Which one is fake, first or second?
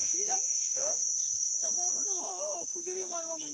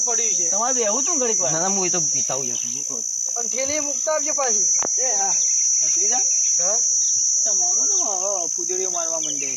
first